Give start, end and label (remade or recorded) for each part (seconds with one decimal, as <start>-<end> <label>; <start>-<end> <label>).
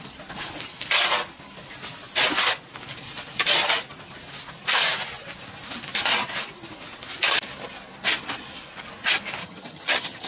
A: 0.0-9.4 recorded; 9.4-10.3 remade